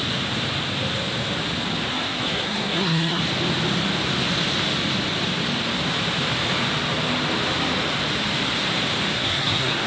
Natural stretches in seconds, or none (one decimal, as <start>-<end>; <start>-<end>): 0.0-1.9; 3.2-9.1